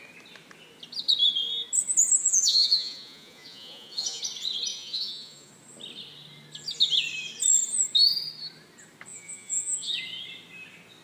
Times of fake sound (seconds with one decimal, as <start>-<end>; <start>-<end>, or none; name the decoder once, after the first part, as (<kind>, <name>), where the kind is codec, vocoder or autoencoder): 2.2-4.2 (vocoder, Vocos); 4.7-5.5; 9.1-9.9

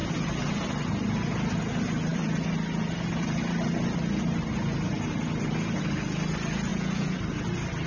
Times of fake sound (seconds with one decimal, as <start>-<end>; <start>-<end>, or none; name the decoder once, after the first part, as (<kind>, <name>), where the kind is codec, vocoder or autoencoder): 6.7-7.2 (vocoder, Vocos)

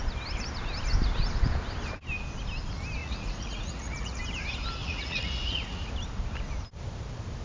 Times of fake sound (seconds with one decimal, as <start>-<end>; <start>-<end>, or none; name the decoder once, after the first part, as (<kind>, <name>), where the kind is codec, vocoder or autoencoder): 3.0-4.2 (vocoder, Vocos); 4.8-5.9

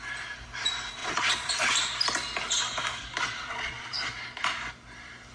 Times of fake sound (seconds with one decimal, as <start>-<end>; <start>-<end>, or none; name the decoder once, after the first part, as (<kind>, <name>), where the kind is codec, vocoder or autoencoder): 1.0-1.5 (vocoder, Vocos); 3.5-4.1

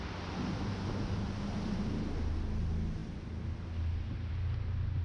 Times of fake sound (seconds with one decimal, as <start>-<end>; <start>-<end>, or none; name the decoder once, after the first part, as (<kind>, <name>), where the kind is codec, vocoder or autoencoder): none

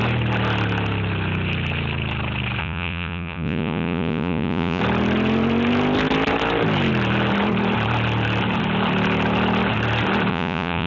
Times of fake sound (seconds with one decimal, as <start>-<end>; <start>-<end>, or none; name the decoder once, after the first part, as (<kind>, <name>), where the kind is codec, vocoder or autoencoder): 2.6-4.8 (vocoder, Vocos); 10.3-10.9

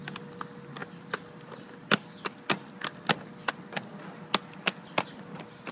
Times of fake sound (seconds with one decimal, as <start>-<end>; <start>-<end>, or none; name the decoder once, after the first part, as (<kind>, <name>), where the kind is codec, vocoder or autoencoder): none